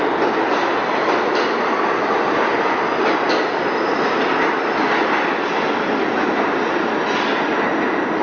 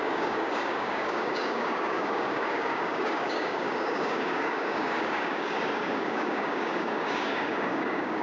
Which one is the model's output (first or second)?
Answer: second